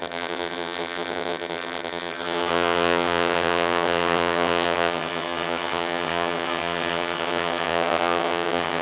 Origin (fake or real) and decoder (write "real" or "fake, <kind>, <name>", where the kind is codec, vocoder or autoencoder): fake, vocoder, HiFi-GAN